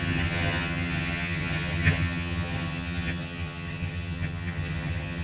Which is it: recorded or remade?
remade